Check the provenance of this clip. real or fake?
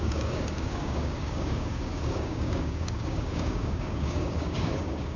fake